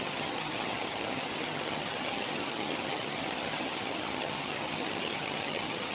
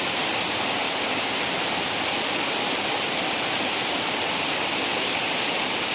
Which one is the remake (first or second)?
first